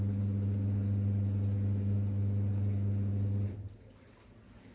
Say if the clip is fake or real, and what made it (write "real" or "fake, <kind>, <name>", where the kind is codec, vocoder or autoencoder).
real